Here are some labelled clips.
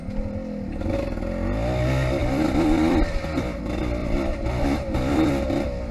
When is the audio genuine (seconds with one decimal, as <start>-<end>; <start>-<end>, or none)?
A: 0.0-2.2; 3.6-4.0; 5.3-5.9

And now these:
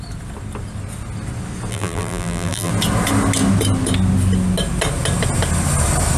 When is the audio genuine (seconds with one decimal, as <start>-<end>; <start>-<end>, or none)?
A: 0.0-1.7; 2.7-6.2

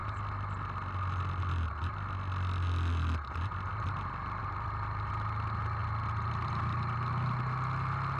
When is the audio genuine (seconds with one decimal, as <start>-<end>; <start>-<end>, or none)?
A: 0.0-4.4; 5.1-5.8; 6.3-8.2

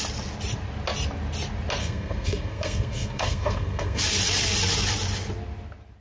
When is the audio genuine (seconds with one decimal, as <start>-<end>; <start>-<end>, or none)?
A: 0.0-1.8; 4.0-6.0

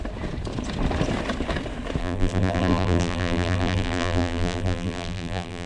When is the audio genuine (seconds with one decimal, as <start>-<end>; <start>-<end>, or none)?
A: 0.0-2.0

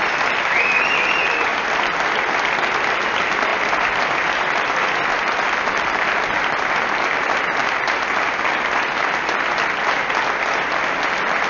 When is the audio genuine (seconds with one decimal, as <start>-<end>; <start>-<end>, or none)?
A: 0.0-11.5

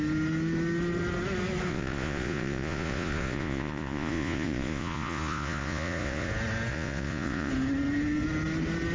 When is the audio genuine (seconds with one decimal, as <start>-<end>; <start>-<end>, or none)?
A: 0.0-1.7; 6.3-6.7; 7.5-8.9